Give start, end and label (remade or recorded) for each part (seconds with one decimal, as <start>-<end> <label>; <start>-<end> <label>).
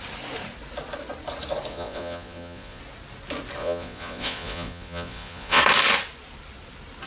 0.0-1.7 recorded; 1.7-2.8 remade; 2.8-3.6 recorded; 3.6-5.6 remade; 5.6-7.1 recorded